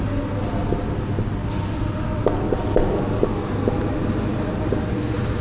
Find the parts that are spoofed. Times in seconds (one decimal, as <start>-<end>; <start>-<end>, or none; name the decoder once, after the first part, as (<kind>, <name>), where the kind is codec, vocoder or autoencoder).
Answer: none